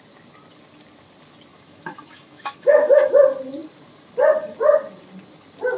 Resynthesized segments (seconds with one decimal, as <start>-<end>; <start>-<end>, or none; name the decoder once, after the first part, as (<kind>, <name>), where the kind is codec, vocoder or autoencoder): 1.5-3.1 (autoencoder, DAC-VAE)